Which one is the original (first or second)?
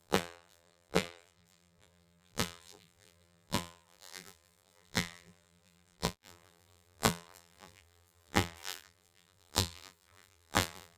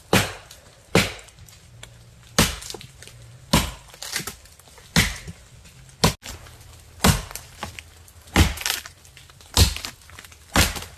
second